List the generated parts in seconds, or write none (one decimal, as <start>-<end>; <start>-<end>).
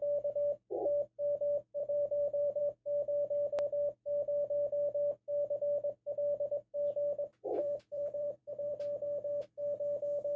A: 1.8-2.6; 7.3-8.7